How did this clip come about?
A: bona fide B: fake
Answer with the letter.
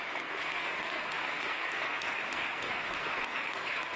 B